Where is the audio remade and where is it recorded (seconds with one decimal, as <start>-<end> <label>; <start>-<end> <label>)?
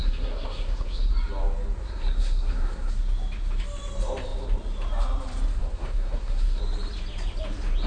0.0-1.1 remade; 1.1-1.8 recorded; 1.8-2.9 remade; 2.9-5.6 recorded; 5.6-6.6 remade; 6.6-7.9 recorded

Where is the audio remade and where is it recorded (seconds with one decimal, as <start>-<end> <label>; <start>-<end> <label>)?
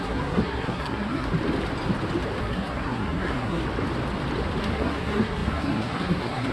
0.0-1.3 remade; 1.3-2.4 recorded; 2.4-3.6 remade; 3.6-4.6 recorded; 4.6-6.5 remade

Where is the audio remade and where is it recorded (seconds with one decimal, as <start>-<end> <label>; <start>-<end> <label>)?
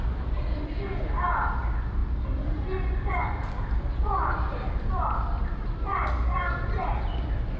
0.0-7.6 recorded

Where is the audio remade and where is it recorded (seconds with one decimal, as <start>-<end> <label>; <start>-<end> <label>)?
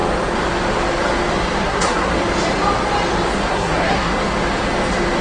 0.0-1.6 recorded; 1.6-2.2 remade; 2.2-3.5 recorded; 3.5-4.1 remade; 4.1-5.2 recorded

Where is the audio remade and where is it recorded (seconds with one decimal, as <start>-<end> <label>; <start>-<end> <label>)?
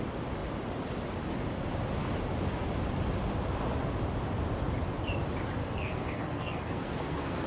0.0-5.6 recorded; 5.6-7.5 remade